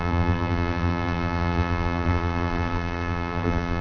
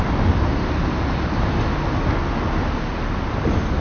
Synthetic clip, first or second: first